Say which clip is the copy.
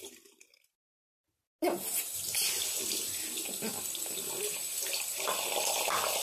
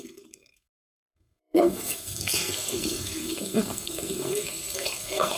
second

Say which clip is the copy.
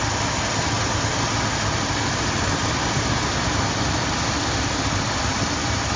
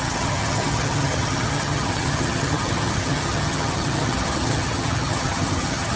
second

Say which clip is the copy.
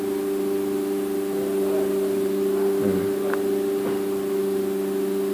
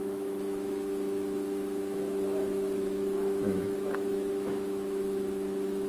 second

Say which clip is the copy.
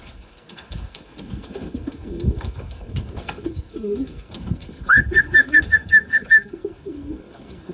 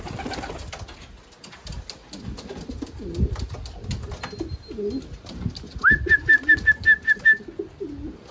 first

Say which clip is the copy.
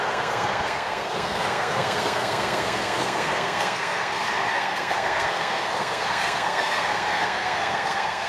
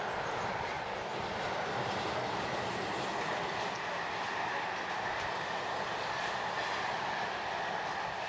first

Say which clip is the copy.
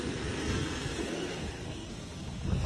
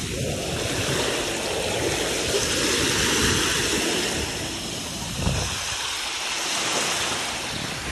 first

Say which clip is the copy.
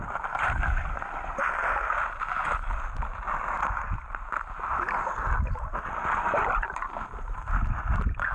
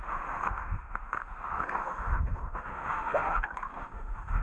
second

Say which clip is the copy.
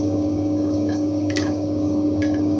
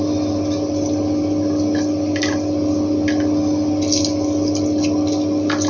first